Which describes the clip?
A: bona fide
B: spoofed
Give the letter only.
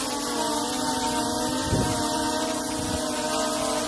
A